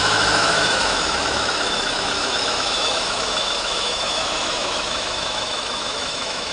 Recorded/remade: remade